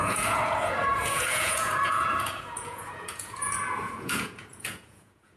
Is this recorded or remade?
remade